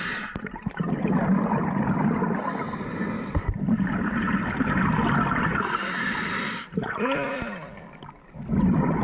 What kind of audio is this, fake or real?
real